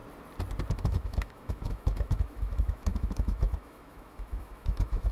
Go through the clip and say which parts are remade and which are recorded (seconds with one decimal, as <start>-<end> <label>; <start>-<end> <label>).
0.0-0.7 recorded; 0.7-5.1 remade